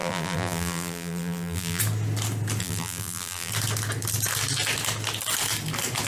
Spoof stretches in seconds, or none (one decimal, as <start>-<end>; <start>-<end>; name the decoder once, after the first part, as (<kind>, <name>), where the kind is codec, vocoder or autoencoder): 0.0-1.8 (vocoder, BigVGAN v2); 2.6-3.5